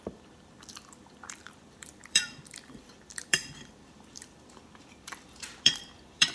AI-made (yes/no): yes